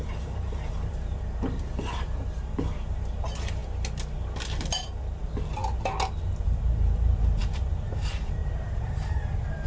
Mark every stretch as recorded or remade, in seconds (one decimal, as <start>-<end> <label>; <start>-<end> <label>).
0.0-3.6 remade; 3.6-4.4 recorded; 4.4-5.6 remade; 5.6-6.4 recorded; 6.4-9.7 remade